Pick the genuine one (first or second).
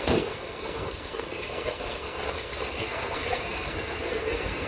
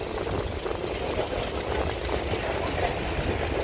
second